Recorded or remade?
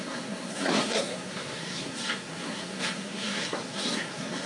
remade